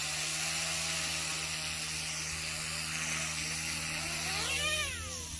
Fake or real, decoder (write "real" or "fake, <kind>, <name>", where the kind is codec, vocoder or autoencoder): real